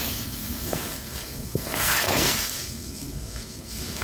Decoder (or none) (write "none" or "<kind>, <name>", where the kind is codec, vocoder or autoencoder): codec, SNAC